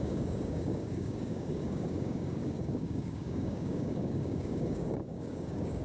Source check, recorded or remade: remade